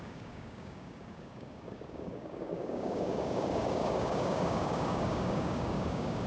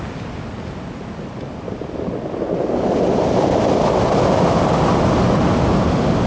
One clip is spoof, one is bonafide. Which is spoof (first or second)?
first